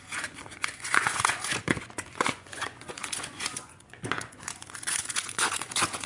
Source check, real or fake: fake